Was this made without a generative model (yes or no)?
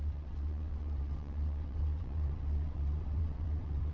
no